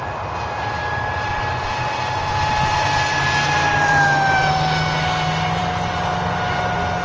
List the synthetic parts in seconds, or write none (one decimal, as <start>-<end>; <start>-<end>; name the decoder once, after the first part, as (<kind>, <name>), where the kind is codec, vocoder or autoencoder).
1.3-4.5 (vocoder, BigVGAN v2)